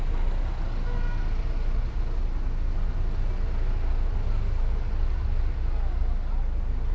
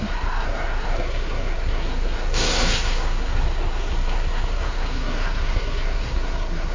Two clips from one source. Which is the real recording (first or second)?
first